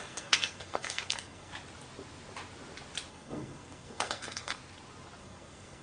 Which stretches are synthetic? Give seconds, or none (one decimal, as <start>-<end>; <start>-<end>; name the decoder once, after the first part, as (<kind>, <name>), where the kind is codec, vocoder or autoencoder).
0.0-1.5 (codec, SNAC); 3.1-4.6; 5.2-5.8